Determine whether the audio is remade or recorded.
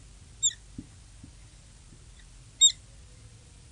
recorded